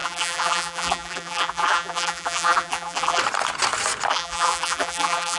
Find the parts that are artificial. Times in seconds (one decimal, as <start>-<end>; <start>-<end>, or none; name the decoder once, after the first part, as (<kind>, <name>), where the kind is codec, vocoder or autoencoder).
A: 0.0-3.2 (vocoder, BigVGAN v2); 4.1-5.4